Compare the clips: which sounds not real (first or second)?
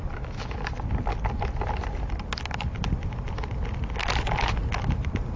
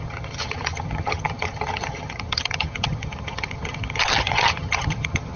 second